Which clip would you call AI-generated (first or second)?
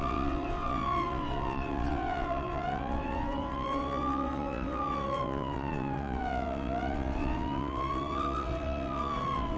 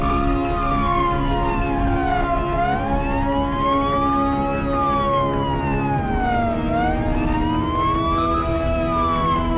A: first